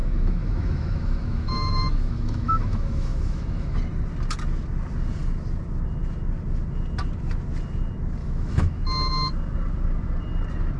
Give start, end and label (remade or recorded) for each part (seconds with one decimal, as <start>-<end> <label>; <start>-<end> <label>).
0.0-3.8 remade; 3.8-8.2 recorded; 8.2-8.8 remade; 8.8-10.8 recorded

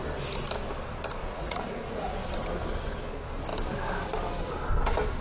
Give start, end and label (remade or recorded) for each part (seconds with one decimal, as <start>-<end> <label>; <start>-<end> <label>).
0.0-1.2 recorded; 1.2-2.1 remade; 2.1-5.2 recorded

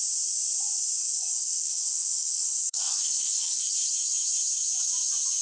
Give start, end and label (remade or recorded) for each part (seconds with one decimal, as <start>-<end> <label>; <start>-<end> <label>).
0.0-1.0 recorded; 1.0-3.7 remade; 3.7-5.4 recorded

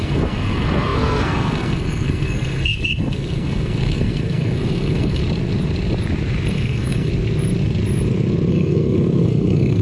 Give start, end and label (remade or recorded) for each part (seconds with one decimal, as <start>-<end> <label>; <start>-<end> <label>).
0.0-5.2 remade; 5.2-6.5 recorded; 6.5-7.1 remade; 7.1-8.5 recorded; 8.5-9.8 remade

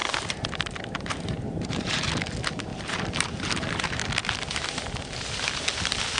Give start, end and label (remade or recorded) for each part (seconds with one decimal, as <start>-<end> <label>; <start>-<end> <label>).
0.0-2.1 remade; 2.1-2.7 recorded; 2.7-4.0 remade; 4.0-6.2 recorded

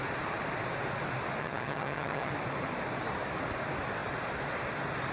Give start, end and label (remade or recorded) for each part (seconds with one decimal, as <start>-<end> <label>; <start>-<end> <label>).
0.0-1.4 recorded; 1.4-2.3 remade; 2.3-5.1 recorded

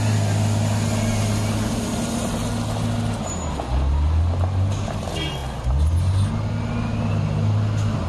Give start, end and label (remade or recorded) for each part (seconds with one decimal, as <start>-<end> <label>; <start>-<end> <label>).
0.0-8.1 recorded